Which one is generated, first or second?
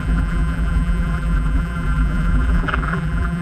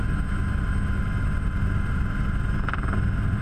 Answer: first